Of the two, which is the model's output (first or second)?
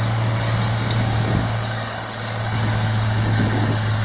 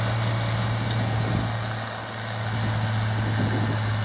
first